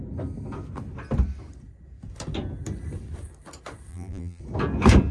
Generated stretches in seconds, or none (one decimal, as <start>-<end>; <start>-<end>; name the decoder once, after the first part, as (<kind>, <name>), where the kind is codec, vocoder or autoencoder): 3.9-4.4 (vocoder, BigVGAN v2)